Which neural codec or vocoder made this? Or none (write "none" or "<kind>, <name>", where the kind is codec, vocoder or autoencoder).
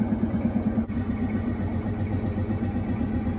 vocoder, Vocos